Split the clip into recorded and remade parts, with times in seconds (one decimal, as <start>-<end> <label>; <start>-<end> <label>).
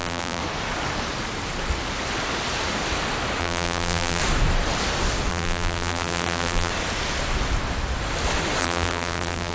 0.0-0.4 remade; 0.4-3.4 recorded; 3.4-4.2 remade; 4.2-5.3 recorded; 5.3-6.7 remade; 6.7-8.6 recorded; 8.6-9.5 remade